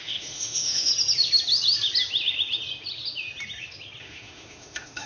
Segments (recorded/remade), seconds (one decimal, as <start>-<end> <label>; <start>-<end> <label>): 0.0-0.9 remade; 0.9-4.0 recorded; 4.0-5.1 remade